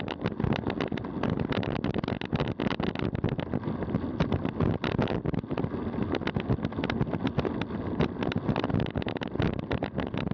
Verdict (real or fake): real